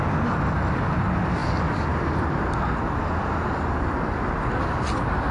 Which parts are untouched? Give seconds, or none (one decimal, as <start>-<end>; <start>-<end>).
0.0-5.3